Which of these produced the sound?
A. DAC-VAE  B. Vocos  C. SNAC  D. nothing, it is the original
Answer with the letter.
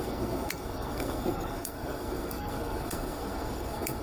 C